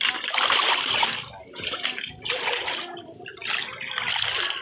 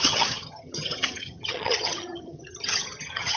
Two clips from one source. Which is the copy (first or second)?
second